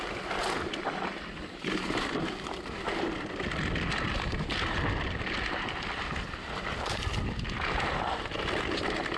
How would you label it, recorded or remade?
recorded